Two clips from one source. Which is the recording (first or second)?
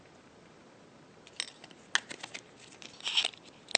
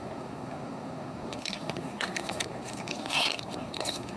first